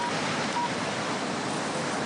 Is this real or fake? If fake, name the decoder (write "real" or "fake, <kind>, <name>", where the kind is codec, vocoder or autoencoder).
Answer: fake, vocoder, BigVGAN v2